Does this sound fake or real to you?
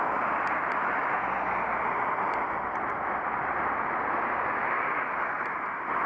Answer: real